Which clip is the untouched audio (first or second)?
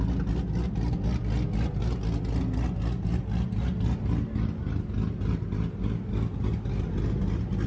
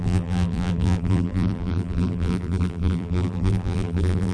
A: first